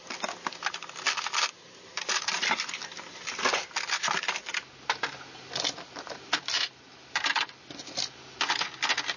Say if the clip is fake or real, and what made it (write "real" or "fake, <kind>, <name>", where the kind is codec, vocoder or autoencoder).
real